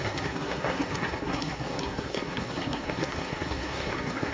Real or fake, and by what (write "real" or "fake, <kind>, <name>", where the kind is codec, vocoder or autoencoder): fake, codec, SNAC